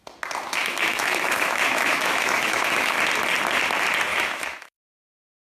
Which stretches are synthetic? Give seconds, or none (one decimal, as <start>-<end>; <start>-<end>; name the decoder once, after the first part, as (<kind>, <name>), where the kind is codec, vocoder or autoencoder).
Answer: 0.6-3.0 (autoencoder, DAC-VAE); 4.1-5.0